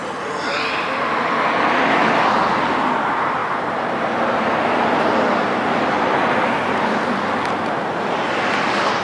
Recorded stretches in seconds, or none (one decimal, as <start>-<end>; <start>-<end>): 0.0-3.4; 4.0-9.0

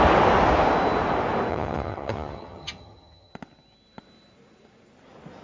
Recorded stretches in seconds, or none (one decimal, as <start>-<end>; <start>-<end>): 0.0-1.5; 3.3-5.4